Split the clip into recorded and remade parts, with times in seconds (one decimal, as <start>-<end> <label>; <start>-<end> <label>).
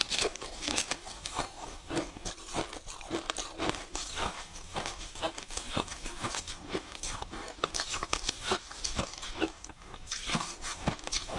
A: 0.0-2.3 remade; 2.3-3.7 recorded; 3.7-11.4 remade